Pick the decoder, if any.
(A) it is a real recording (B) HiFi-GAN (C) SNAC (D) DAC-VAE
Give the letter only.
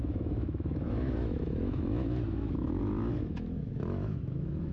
D